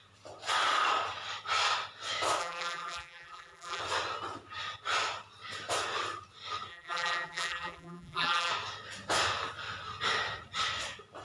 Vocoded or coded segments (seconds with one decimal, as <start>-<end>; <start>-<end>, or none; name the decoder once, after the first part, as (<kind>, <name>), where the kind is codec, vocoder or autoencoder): 2.4-3.8 (vocoder, BigVGAN v2); 6.7-8.5